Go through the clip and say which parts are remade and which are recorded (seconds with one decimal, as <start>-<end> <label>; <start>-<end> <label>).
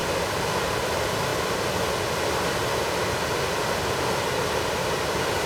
0.0-5.5 recorded